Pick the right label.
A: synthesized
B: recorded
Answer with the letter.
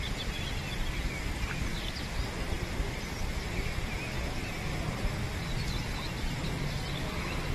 B